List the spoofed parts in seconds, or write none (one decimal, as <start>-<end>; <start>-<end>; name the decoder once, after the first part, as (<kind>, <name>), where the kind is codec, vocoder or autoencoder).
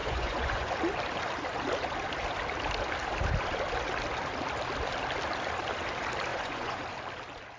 0.0-0.7 (vocoder, Vocos); 6.3-6.8